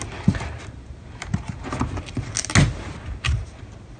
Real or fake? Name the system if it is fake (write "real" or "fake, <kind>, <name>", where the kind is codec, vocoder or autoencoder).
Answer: real